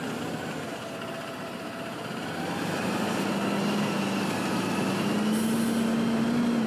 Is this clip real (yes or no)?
yes